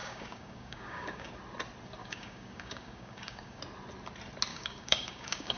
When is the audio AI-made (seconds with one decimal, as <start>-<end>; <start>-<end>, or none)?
0.0-1.3; 2.0-3.6; 4.5-5.6